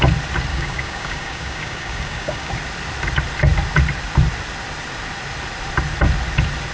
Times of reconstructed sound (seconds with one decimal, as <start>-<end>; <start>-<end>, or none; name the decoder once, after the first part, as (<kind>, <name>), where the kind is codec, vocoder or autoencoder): 0.5-2.5 (codec, DAC)